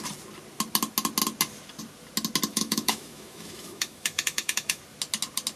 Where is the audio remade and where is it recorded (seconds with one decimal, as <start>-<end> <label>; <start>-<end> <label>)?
0.0-2.5 recorded; 2.5-4.8 remade; 4.8-5.6 recorded